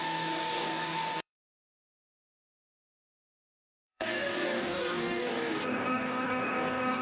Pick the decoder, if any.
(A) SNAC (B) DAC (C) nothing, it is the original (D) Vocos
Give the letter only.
B